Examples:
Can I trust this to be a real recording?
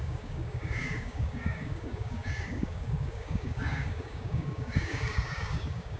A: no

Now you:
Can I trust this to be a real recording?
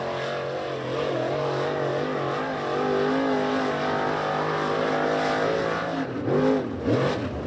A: yes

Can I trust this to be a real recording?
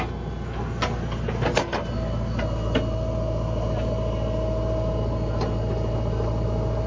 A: yes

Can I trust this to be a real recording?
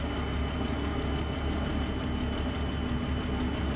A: yes